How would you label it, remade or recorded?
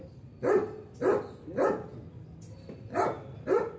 recorded